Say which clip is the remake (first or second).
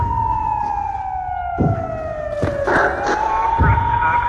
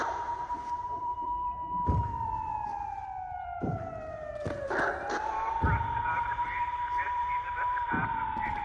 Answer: second